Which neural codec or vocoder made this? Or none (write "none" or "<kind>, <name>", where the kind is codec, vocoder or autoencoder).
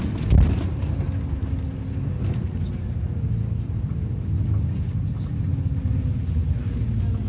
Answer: none